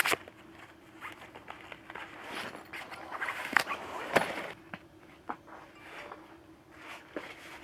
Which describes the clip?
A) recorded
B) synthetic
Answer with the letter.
A